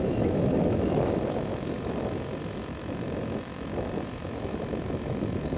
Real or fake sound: fake